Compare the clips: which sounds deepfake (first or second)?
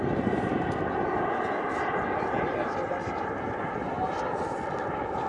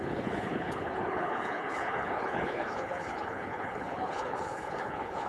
second